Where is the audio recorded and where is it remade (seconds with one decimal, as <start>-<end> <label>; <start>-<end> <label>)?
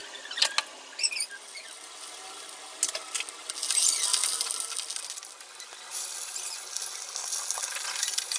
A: 0.0-8.4 recorded